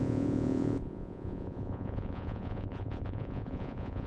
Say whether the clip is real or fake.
fake